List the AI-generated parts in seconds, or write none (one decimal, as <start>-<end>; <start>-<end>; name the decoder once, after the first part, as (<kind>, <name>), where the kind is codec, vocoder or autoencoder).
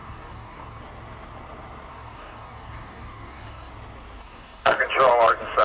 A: 0.0-0.8 (codec, DAC); 1.9-3.7; 4.2-4.8